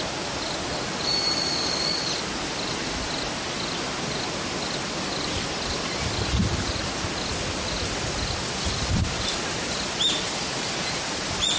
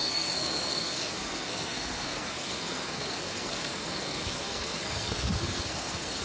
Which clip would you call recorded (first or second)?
first